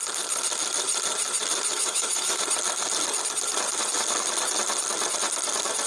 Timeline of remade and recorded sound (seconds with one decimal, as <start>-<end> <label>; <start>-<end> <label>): 0.0-1.7 recorded; 1.7-2.4 remade; 2.4-5.9 recorded